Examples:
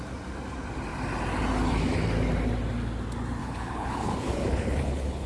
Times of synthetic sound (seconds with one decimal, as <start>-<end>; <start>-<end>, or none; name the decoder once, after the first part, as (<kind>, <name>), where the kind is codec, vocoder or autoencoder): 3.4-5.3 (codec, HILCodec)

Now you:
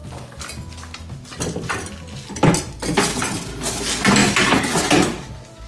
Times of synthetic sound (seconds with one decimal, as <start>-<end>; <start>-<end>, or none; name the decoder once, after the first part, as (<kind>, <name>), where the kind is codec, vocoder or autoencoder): none

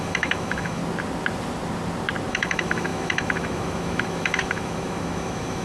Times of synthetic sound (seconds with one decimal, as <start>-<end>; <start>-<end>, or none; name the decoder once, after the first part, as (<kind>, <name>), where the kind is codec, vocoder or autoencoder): 0.0-0.8 (autoencoder, DAC-VAE); 2.3-5.6

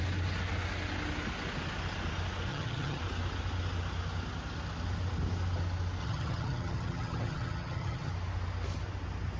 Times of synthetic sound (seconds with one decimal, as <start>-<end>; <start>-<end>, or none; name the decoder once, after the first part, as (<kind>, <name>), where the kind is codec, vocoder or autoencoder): 2.5-3.0 (vocoder, HiFi-GAN); 6.0-8.1